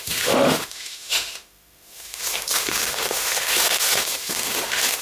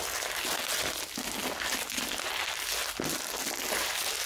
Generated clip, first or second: first